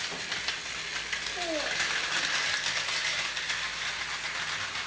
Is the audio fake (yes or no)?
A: no